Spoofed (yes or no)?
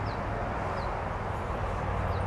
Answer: no